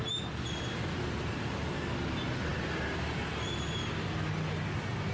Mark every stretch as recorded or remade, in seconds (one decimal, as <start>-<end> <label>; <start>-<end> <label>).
0.0-2.5 recorded; 2.5-3.0 remade; 3.0-5.1 recorded

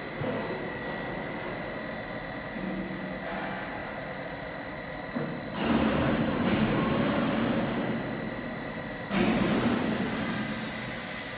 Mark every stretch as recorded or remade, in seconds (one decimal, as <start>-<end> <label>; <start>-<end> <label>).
0.0-3.8 recorded; 3.8-6.7 remade; 6.7-11.4 recorded

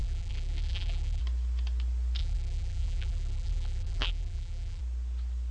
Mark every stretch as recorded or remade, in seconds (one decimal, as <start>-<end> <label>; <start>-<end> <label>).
0.0-1.2 remade; 1.2-2.2 recorded; 2.2-4.8 remade; 4.8-5.5 recorded